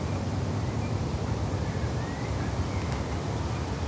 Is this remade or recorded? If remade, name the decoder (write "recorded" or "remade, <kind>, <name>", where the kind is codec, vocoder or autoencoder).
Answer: recorded